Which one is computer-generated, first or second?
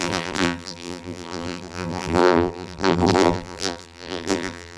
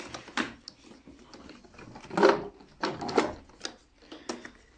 first